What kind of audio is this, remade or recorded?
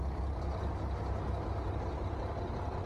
recorded